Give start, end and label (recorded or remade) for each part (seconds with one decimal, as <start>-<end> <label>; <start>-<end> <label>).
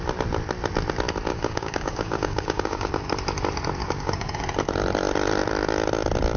0.0-1.3 recorded; 1.3-2.9 remade; 2.9-3.8 recorded; 3.8-4.4 remade; 4.4-6.4 recorded